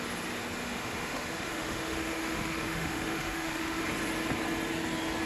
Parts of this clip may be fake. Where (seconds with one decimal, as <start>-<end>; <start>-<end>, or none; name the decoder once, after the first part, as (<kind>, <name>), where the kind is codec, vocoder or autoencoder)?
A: 0.6-3.8 (autoencoder, DAC-VAE)